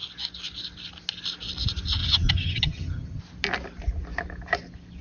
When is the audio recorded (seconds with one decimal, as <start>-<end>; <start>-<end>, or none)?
0.0-2.0; 3.2-5.0